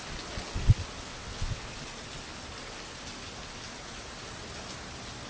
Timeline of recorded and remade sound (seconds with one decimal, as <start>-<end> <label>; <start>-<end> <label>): 0.0-1.1 recorded; 1.1-1.7 remade; 1.7-5.3 recorded